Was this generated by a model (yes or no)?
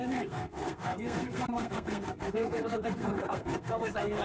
yes